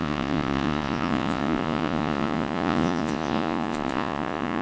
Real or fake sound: fake